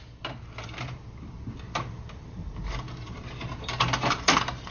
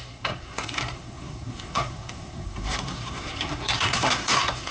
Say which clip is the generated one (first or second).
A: second